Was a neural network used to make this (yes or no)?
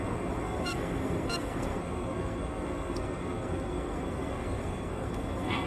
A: yes